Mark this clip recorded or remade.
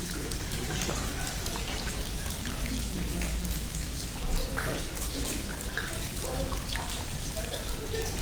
remade